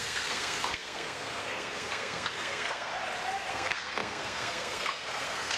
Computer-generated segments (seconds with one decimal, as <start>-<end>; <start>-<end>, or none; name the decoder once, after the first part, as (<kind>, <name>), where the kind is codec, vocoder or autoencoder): 0.0-2.9 (codec, SNAC); 3.5-5.6